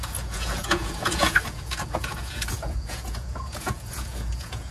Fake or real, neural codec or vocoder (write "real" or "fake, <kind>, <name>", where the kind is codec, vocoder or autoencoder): fake, vocoder, Vocos